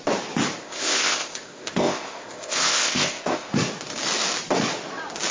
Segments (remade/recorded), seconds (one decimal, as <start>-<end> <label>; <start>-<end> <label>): 0.0-0.6 recorded; 0.6-3.5 remade; 3.5-5.3 recorded